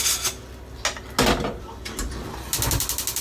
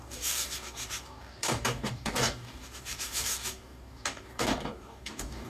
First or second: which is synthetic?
second